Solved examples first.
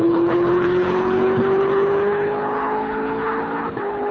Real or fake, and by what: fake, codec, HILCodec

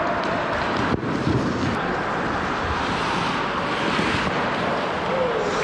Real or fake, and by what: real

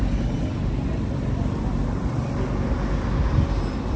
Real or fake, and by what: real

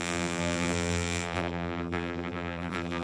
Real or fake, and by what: fake, vocoder, BigVGAN v2